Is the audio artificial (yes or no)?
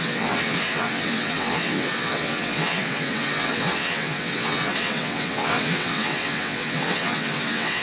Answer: yes